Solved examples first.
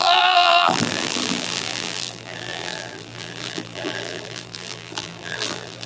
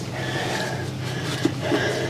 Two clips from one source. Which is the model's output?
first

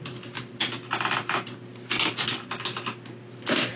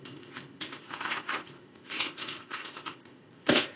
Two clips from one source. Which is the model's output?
second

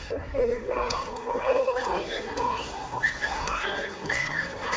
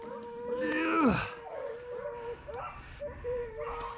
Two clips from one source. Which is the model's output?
first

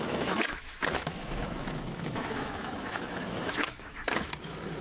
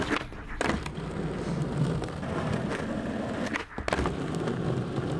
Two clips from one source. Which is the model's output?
first